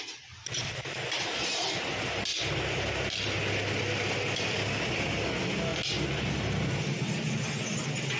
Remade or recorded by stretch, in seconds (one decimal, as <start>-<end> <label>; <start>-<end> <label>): 0.0-8.2 recorded